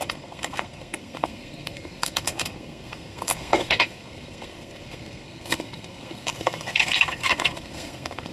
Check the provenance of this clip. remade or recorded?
remade